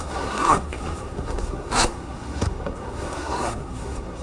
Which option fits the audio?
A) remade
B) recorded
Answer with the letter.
A